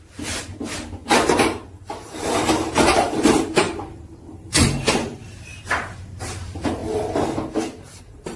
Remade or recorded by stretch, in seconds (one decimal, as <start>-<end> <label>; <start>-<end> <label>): 0.0-6.8 remade; 6.8-8.0 recorded; 8.0-8.4 remade